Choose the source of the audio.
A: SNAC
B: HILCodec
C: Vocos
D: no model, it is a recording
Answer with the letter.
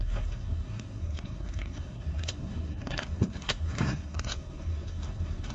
A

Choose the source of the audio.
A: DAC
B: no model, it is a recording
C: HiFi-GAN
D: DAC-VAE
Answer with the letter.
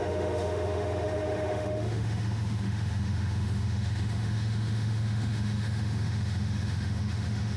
D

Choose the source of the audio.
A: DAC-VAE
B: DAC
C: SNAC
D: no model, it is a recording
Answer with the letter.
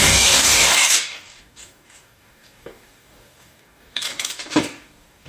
B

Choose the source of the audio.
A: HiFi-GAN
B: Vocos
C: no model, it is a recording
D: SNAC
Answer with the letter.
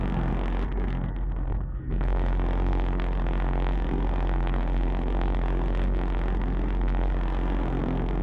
D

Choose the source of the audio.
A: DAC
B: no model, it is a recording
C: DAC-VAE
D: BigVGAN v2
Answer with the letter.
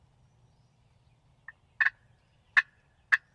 B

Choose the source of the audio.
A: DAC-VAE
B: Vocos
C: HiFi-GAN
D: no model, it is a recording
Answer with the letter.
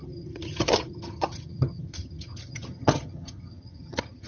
C